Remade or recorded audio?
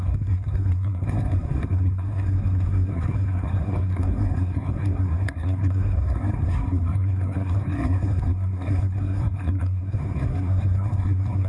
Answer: remade